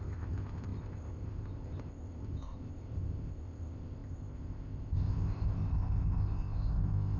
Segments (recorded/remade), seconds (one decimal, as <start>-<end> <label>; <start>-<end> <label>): 0.0-7.2 remade